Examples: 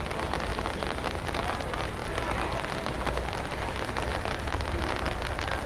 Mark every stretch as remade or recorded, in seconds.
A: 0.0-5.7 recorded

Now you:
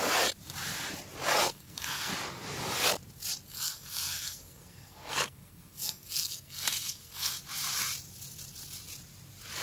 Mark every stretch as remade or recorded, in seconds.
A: 0.0-1.4 recorded; 1.4-2.1 remade; 2.1-3.5 recorded; 3.5-7.4 remade; 7.4-9.6 recorded